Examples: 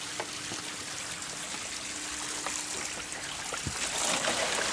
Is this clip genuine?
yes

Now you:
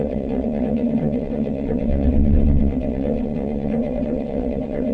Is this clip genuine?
no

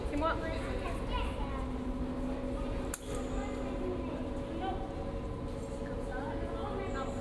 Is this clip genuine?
yes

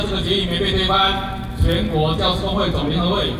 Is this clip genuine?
yes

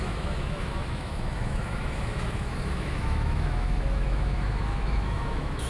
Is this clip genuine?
no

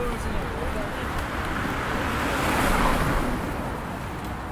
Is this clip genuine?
yes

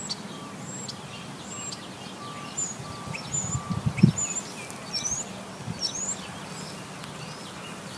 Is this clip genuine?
yes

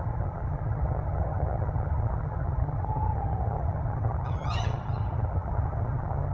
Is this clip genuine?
no